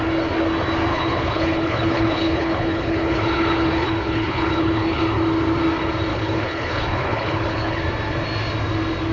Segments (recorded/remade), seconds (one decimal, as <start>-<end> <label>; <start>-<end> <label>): 0.0-0.9 recorded; 0.9-5.0 remade; 5.0-6.1 recorded; 6.1-7.8 remade; 7.8-9.1 recorded